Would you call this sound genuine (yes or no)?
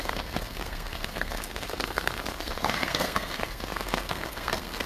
no